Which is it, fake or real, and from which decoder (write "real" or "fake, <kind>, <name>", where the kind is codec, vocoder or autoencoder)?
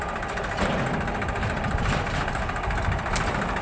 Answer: real